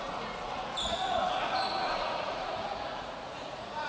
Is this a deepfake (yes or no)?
yes